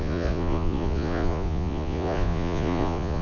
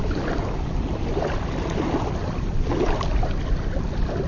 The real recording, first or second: second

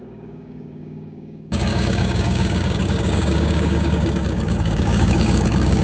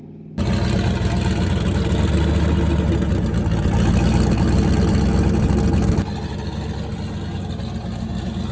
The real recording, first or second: second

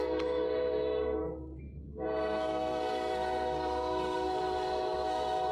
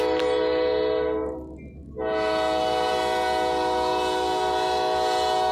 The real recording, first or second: second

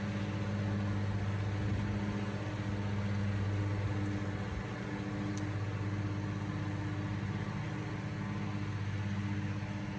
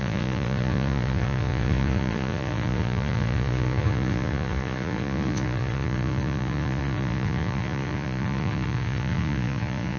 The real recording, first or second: first